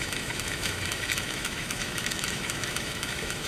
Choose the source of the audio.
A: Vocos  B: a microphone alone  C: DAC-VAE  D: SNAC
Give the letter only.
C